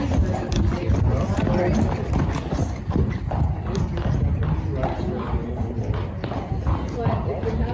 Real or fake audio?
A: real